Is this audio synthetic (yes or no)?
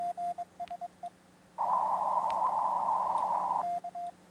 no